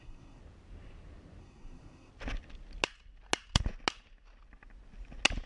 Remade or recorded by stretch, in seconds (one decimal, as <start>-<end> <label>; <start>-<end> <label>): 0.0-0.4 remade; 0.4-1.4 recorded; 1.4-2.1 remade; 2.1-5.5 recorded